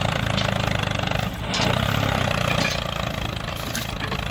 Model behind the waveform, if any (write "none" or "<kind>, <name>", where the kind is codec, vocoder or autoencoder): none